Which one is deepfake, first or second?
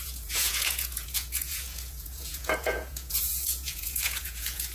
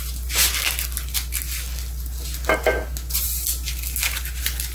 first